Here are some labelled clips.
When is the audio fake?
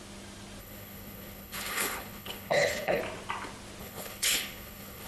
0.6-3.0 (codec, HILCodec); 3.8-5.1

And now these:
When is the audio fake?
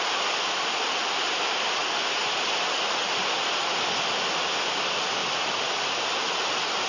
none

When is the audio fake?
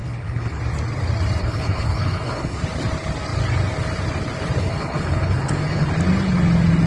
0.0-0.6 (codec, HILCodec); 1.4-2.6; 4.6-5.9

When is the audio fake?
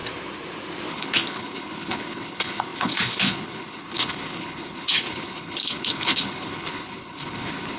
0.9-7.8 (codec, HILCodec)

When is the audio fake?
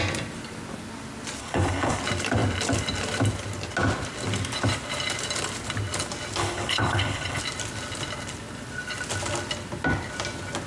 1.4-2.0 (codec, HILCodec); 6.4-7.4